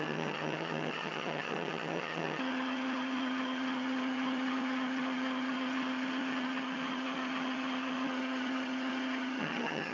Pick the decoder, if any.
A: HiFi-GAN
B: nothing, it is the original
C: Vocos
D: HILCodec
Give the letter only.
A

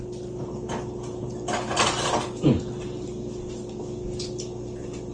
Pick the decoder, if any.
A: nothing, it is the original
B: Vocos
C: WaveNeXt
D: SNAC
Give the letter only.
A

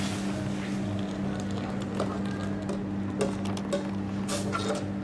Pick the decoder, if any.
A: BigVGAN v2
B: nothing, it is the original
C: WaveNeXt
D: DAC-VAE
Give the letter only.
B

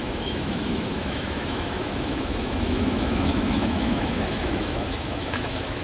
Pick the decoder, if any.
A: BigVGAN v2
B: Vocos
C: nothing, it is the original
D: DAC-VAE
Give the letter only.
D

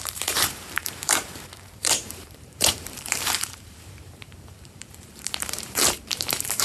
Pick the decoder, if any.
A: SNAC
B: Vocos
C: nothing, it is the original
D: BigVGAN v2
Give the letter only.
D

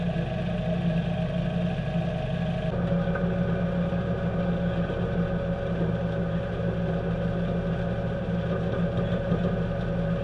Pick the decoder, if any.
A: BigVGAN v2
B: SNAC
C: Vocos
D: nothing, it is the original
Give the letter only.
D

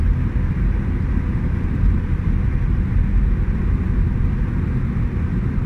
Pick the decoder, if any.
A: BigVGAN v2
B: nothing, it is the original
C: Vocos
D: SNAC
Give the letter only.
A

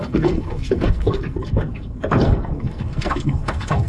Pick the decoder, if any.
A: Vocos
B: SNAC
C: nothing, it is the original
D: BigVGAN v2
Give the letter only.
B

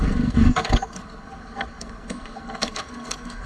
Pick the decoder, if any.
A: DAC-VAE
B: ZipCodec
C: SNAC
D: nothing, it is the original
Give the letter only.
C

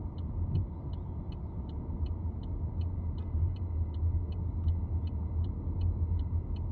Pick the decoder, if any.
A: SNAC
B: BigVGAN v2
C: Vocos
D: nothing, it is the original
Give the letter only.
D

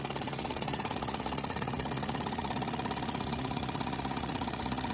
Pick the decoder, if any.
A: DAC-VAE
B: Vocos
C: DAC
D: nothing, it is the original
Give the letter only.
B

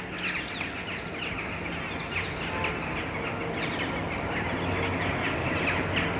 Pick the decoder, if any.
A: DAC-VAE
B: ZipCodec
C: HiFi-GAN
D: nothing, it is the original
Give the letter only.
D